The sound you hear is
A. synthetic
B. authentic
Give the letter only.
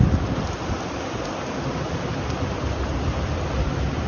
B